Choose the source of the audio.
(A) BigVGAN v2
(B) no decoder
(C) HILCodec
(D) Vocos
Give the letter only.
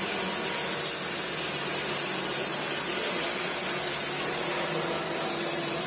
B